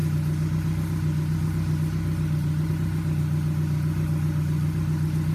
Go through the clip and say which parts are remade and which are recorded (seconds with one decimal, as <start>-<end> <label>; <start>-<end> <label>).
0.0-5.3 recorded